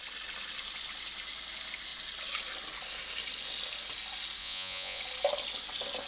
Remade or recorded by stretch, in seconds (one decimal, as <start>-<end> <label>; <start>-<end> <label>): 0.0-4.4 recorded; 4.4-5.0 remade; 5.0-6.1 recorded